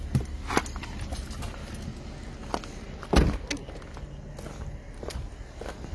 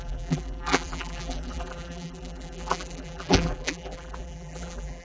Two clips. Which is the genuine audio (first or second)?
first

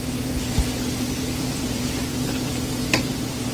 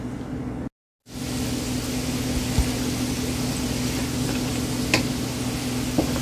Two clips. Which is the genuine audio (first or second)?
second